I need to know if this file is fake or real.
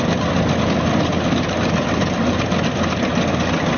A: real